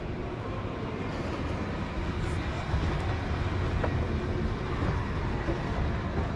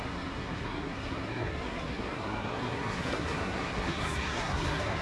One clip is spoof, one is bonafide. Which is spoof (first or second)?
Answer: second